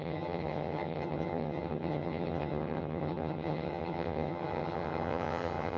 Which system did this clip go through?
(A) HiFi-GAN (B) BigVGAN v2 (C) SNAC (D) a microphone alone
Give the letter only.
A